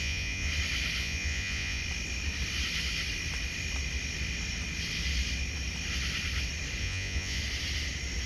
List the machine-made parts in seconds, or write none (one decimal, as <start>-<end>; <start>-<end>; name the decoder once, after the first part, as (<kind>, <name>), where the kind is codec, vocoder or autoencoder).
0.0-0.5 (vocoder, Vocos); 1.0-1.8; 6.8-7.4